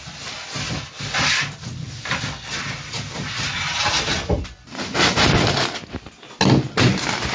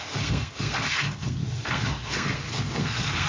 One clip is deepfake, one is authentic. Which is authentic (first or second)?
first